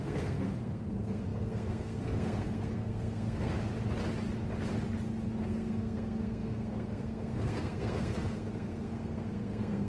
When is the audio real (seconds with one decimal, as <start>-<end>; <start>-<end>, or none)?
3.5-5.4